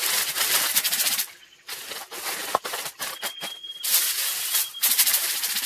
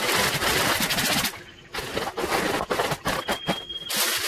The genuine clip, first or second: second